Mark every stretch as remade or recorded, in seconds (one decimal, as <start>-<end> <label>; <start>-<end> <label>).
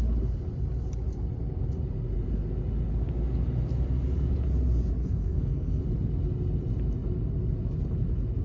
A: 0.0-5.0 recorded; 5.0-5.8 remade; 5.8-8.4 recorded